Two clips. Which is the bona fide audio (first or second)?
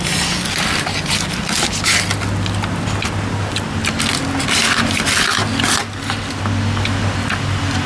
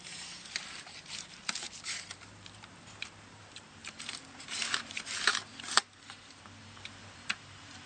first